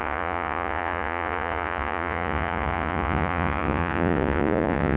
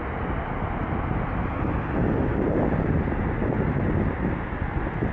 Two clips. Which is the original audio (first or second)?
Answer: second